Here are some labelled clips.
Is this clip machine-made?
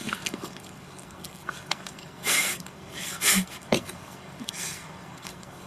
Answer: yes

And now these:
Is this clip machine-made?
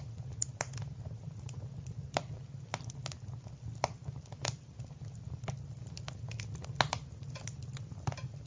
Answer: no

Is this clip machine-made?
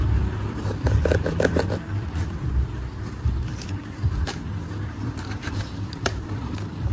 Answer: yes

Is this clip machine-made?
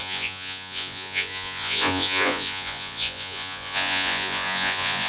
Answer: yes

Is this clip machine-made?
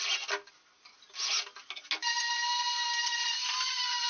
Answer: no